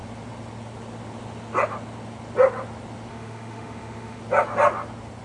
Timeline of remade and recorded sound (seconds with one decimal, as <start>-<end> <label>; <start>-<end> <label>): 0.0-3.1 recorded; 3.1-4.2 remade; 4.2-5.2 recorded